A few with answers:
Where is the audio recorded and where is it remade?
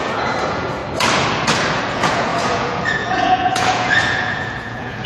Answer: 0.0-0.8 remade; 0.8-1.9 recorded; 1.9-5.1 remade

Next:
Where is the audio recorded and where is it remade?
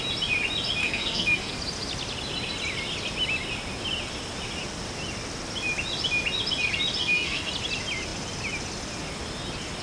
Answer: 0.0-0.8 recorded; 0.8-1.5 remade; 1.5-7.0 recorded; 7.0-7.5 remade; 7.5-9.8 recorded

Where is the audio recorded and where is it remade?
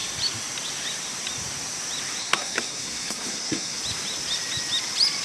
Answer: 0.0-2.2 recorded; 2.2-3.8 remade; 3.8-5.2 recorded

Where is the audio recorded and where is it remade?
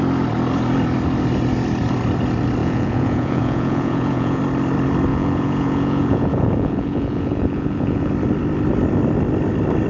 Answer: 0.0-2.6 recorded; 2.6-4.4 remade; 4.4-5.1 recorded; 5.1-8.1 remade; 8.1-9.9 recorded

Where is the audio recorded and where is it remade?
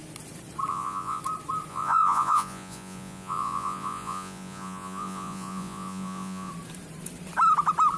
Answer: 0.0-0.7 recorded; 0.7-1.2 remade; 1.2-1.7 recorded; 1.7-6.5 remade; 6.5-8.0 recorded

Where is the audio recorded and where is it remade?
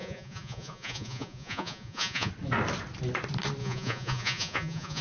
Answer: 0.0-2.3 remade; 2.3-3.6 recorded; 3.6-5.0 remade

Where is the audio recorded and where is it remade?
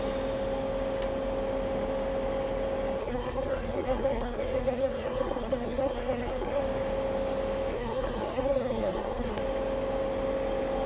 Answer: 0.0-3.0 recorded; 3.0-6.6 remade; 6.6-7.7 recorded; 7.7-9.4 remade; 9.4-10.9 recorded